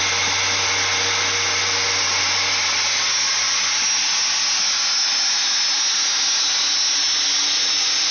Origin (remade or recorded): recorded